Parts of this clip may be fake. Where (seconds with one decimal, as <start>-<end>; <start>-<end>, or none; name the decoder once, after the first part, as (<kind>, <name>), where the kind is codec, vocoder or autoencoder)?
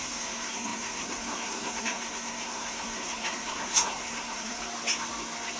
0.0-4.6 (codec, SNAC)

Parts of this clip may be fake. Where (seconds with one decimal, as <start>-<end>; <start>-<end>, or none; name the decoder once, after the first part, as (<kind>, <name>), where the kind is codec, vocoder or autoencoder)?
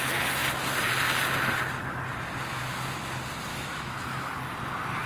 3.5-4.3 (autoencoder, DAC-VAE)